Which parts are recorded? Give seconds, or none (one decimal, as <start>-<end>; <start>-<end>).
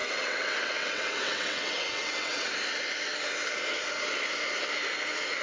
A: 2.5-5.4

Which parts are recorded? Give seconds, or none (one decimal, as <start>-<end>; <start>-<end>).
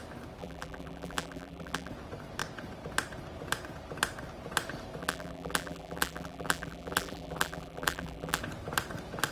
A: 0.0-0.4; 1.9-5.0; 8.4-9.3